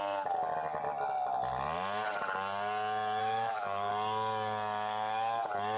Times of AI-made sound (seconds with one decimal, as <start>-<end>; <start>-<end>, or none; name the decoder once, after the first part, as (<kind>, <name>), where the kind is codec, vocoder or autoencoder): 3.2-3.9 (autoencoder, DAC-VAE)